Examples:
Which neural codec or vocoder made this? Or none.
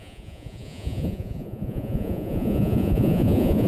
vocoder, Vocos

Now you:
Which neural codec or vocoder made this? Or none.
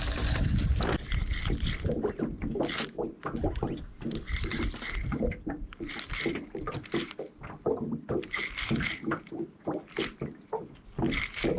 none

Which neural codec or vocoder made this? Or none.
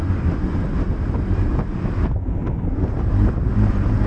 none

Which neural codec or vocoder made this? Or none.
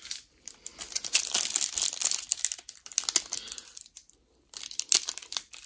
none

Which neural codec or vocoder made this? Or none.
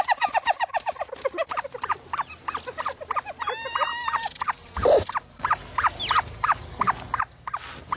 none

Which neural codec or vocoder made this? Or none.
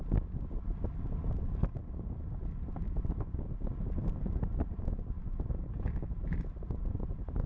none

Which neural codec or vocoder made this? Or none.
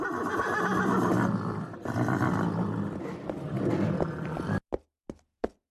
none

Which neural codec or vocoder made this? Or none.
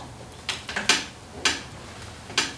none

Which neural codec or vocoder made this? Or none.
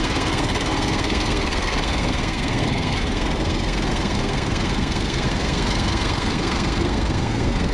codec, SNAC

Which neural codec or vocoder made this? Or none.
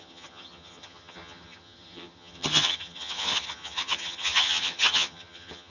vocoder, HiFi-GAN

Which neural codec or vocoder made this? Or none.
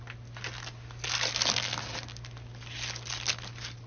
none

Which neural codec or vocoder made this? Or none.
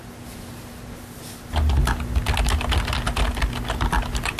none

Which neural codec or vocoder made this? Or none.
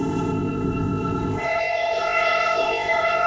codec, ZipCodec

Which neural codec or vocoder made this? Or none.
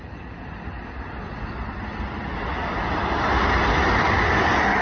none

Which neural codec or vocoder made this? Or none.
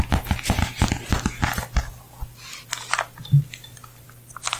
none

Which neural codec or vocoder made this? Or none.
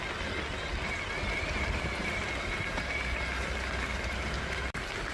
none